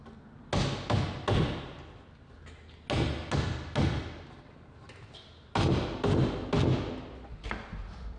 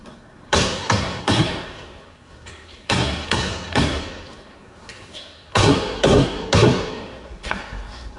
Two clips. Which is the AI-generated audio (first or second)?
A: second